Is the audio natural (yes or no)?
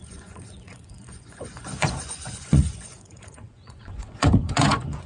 no